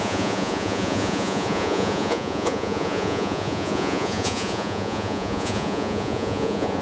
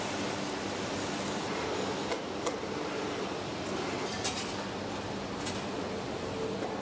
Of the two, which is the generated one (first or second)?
first